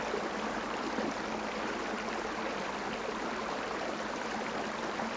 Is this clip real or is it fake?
real